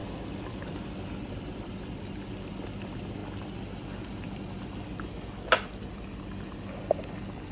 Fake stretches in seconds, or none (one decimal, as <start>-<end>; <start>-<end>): none